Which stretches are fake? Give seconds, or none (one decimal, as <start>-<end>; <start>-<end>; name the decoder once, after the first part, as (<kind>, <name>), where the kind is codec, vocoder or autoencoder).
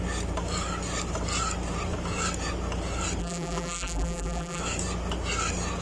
3.2-4.6 (vocoder, BigVGAN v2)